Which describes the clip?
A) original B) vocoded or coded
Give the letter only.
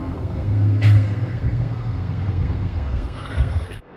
B